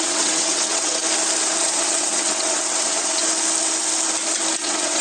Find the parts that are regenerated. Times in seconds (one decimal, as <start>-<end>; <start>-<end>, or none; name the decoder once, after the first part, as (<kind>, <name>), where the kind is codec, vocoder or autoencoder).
0.0-1.0 (vocoder, WaveNeXt); 1.6-3.2; 4.6-5.0